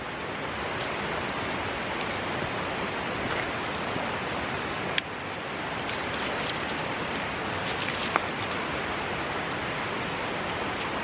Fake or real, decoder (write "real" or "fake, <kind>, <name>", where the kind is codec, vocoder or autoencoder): real